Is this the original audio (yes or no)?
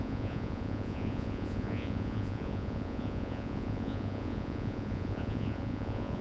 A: no